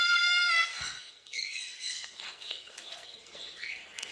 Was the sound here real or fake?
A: fake